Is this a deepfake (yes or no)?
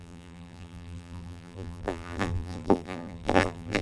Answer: yes